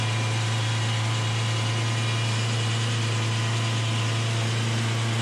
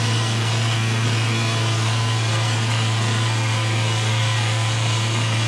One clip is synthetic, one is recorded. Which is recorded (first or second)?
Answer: first